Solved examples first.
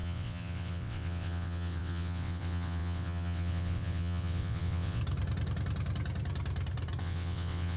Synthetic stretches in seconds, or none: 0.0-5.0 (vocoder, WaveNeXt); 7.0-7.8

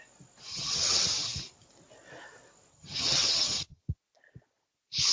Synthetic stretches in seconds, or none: 0.5-1.0 (vocoder, HiFi-GAN); 2.7-3.8

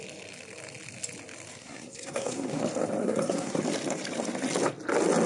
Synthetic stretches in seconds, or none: 1.6-2.6 (codec, SNAC); 3.0-3.6